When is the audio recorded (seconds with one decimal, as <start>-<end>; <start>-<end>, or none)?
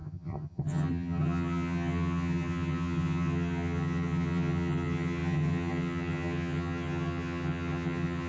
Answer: none